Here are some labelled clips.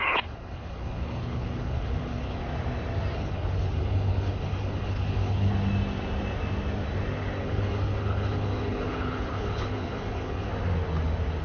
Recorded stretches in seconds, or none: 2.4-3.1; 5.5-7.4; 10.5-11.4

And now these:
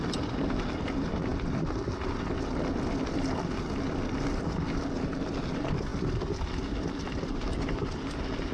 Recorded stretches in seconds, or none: 0.0-8.5

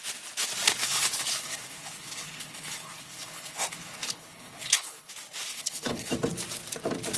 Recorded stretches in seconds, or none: 0.0-0.8; 5.1-5.5; 6.1-7.2

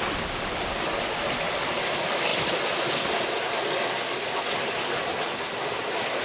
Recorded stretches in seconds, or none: 0.0-6.2

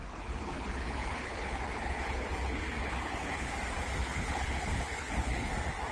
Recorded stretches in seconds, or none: 3.5-4.0; 5.5-5.9

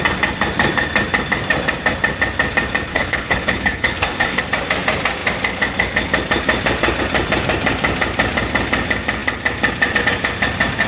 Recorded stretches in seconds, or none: 0.0-2.9; 4.4-10.9